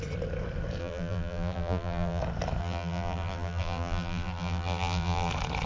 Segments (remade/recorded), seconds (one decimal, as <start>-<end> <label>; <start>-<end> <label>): 0.0-0.8 recorded; 0.8-2.2 remade; 2.2-2.6 recorded; 2.6-5.3 remade; 5.3-5.7 recorded